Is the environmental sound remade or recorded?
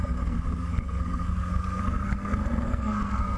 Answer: remade